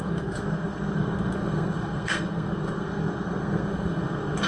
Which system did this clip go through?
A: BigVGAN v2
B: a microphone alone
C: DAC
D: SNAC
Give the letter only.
D